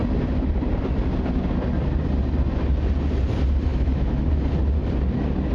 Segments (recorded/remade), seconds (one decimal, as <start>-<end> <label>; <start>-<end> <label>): 0.0-3.7 recorded; 3.7-4.3 remade; 4.3-5.5 recorded